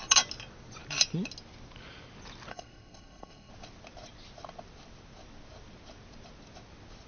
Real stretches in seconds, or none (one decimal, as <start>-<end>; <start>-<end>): 0.0-2.5; 3.5-7.1